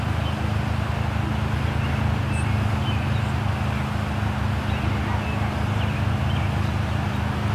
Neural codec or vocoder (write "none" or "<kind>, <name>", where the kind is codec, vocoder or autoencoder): none